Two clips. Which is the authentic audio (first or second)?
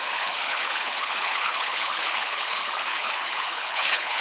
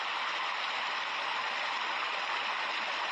second